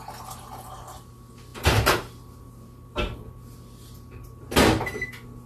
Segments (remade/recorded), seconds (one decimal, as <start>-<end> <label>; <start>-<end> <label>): 0.0-5.5 recorded